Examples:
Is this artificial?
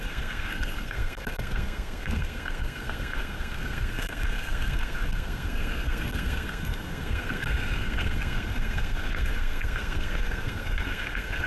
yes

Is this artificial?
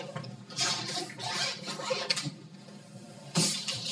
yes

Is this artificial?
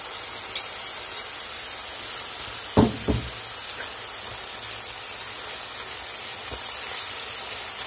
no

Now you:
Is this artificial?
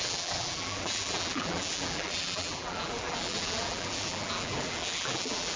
yes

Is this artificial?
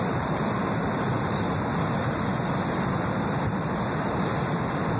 yes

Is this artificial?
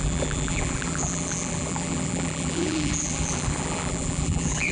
yes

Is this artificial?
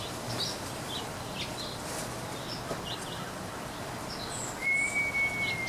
no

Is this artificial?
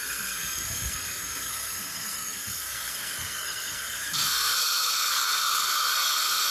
yes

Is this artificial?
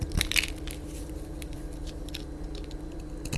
yes